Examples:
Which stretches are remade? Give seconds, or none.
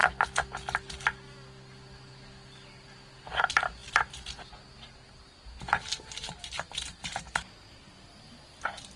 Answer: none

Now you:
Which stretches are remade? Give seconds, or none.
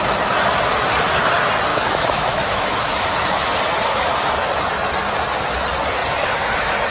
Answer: 1.7-3.5 (autoencoder, DAC-VAE)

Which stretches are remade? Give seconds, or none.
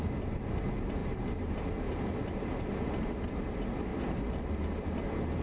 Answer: 1.0-1.5 (vocoder, BigVGAN v2)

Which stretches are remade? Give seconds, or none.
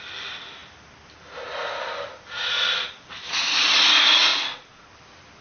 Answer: 4.3-4.9 (vocoder, Vocos)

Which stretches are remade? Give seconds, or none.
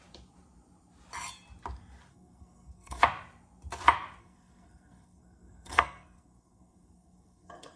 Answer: 2.1-3.0 (codec, SNAC); 4.2-7.8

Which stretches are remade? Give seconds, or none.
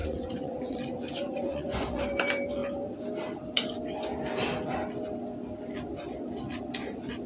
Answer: 0.0-2.0 (vocoder, Vocos)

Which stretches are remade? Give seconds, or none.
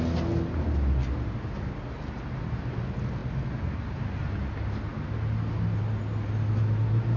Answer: none